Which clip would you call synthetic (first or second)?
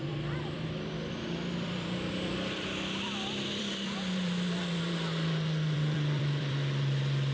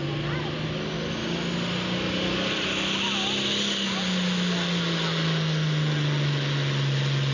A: first